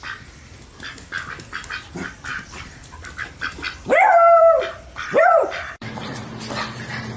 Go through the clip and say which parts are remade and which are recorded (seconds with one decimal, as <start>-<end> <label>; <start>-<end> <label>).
0.0-2.3 recorded; 2.3-6.6 remade; 6.6-7.2 recorded